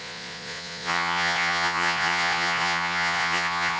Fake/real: fake